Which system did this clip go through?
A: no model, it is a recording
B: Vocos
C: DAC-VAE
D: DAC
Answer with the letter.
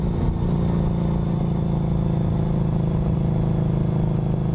A